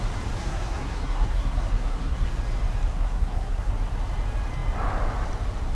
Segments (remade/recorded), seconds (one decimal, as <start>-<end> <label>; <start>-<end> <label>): 0.0-0.4 recorded; 0.4-2.4 remade; 2.4-2.9 recorded; 2.9-3.7 remade; 3.7-5.7 recorded